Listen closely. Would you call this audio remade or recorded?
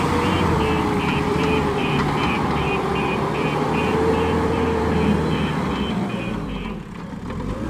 remade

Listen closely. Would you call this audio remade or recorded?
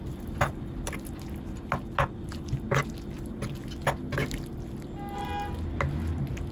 recorded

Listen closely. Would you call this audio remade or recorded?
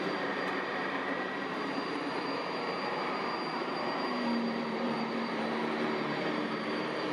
remade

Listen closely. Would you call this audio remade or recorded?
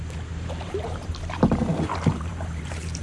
remade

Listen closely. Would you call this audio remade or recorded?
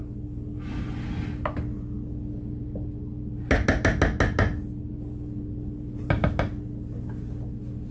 recorded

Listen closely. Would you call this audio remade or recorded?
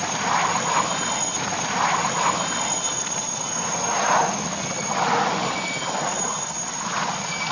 recorded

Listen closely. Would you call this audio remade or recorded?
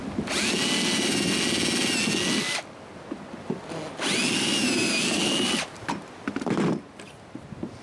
recorded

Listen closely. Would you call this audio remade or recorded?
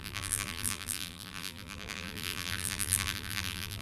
remade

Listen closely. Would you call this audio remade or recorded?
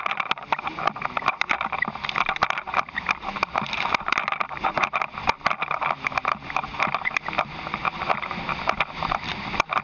recorded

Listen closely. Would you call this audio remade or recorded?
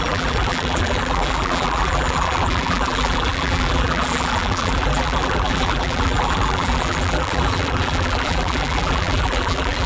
remade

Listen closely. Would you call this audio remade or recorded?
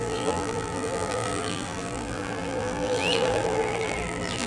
remade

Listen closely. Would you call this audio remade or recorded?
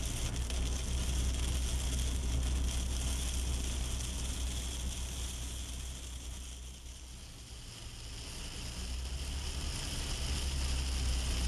recorded